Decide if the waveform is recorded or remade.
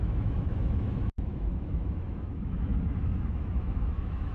remade